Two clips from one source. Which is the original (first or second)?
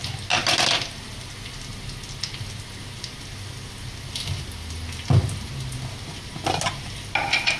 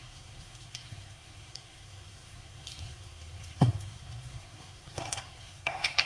first